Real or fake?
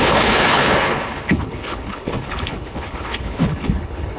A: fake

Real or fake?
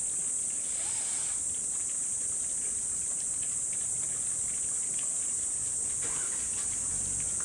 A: real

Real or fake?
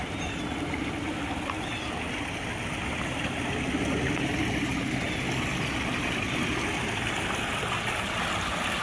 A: real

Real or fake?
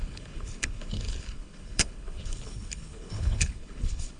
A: fake